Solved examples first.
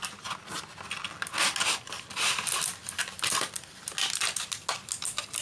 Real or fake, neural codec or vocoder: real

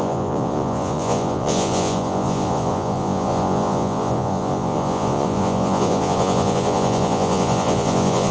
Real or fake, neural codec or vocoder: fake, vocoder, Vocos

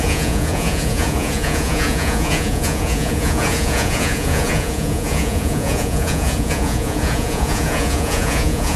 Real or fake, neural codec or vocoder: fake, vocoder, Vocos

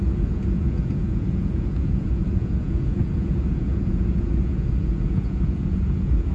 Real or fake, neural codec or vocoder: fake, vocoder, Vocos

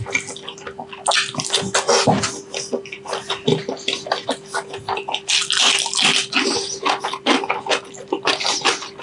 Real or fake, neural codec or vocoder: real